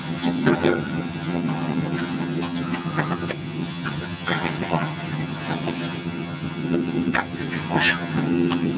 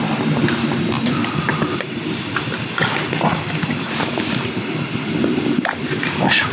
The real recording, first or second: second